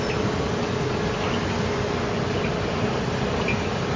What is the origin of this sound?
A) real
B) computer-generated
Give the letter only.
A